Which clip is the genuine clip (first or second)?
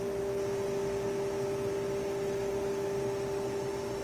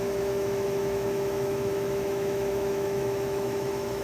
first